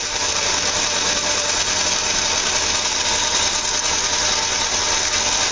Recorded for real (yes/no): no